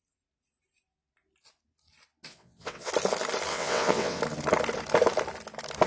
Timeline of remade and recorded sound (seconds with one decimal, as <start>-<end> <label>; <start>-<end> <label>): 0.0-2.3 recorded; 2.3-2.9 remade; 2.9-3.5 recorded; 3.5-4.2 remade; 4.2-5.9 recorded